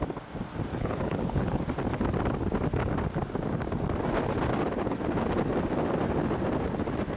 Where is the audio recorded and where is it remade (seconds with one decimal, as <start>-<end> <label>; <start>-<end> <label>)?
0.0-0.7 recorded; 0.7-1.6 remade; 1.6-7.2 recorded